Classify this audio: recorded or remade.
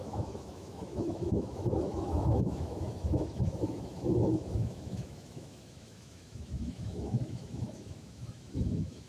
remade